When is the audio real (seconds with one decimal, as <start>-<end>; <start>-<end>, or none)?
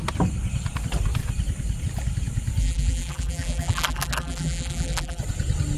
0.0-2.6; 5.2-5.8